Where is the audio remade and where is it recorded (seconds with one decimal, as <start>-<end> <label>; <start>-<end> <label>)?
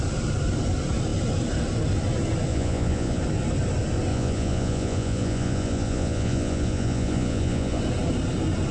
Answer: 0.0-2.5 recorded; 2.5-3.2 remade; 3.2-4.1 recorded; 4.1-7.8 remade; 7.8-8.7 recorded